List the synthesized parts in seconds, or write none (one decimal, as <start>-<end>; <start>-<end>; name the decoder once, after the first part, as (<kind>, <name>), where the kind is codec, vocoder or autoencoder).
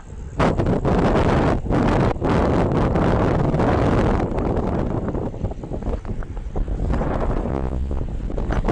7.5-8.0 (vocoder, Vocos)